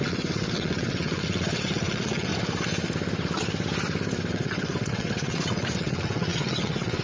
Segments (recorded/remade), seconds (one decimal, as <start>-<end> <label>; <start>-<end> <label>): 0.0-2.3 remade; 2.3-4.3 recorded; 4.3-7.0 remade